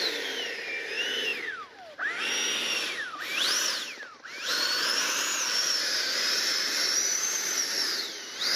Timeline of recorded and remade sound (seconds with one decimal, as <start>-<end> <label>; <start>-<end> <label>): 0.0-1.3 remade; 1.3-2.7 recorded; 2.7-8.6 remade